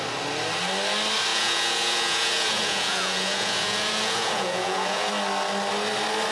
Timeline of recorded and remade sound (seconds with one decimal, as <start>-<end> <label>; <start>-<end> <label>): 0.0-1.3 recorded; 1.3-5.1 remade; 5.1-6.3 recorded